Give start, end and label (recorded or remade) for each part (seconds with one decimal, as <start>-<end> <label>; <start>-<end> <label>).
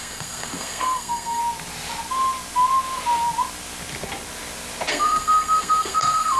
0.0-1.4 remade; 1.4-4.9 recorded; 4.9-6.4 remade